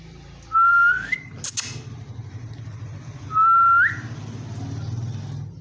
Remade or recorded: recorded